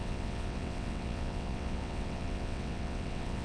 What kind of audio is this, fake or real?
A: fake